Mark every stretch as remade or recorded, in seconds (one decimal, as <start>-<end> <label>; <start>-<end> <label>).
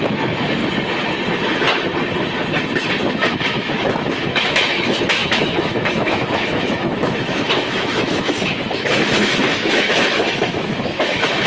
0.0-0.6 remade; 0.6-3.1 recorded; 3.1-11.5 remade